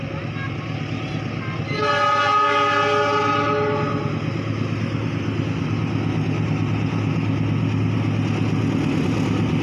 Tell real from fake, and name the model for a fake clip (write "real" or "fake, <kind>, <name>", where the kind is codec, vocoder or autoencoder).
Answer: real